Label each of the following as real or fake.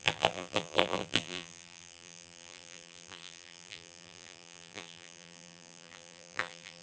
fake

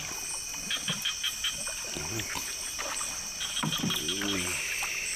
real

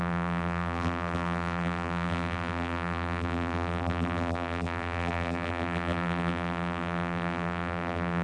fake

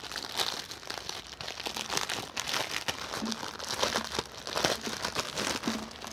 real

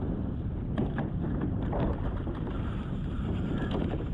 fake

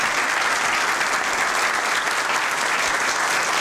real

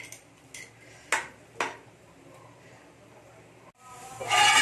real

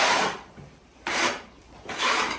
fake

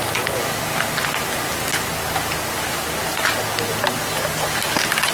real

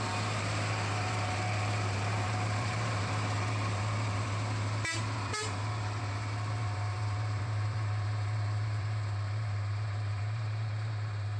fake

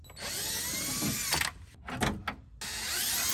real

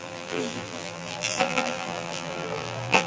fake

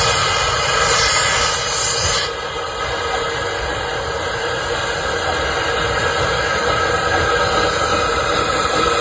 real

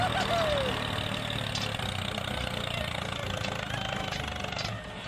real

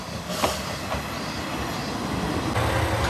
real